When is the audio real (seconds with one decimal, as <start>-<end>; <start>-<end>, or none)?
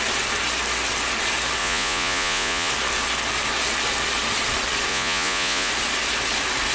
0.0-1.6; 2.7-4.9; 5.7-6.7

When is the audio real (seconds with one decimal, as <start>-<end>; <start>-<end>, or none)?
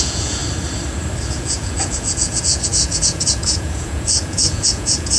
0.4-1.3